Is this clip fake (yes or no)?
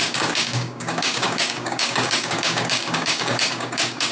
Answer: yes